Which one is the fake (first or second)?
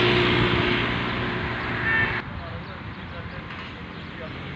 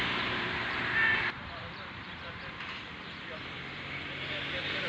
second